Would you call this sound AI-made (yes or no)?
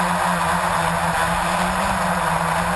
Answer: no